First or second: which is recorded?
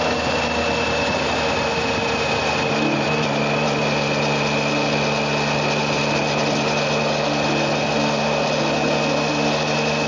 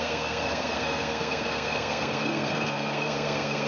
first